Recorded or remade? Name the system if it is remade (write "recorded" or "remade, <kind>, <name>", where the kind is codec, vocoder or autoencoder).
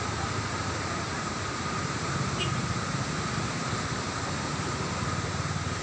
remade, vocoder, BigVGAN v2